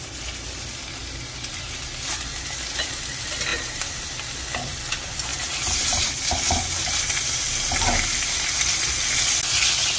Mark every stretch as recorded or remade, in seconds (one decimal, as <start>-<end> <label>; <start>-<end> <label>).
0.0-3.5 recorded; 3.5-4.0 remade; 4.0-5.3 recorded; 5.3-6.2 remade; 6.2-10.0 recorded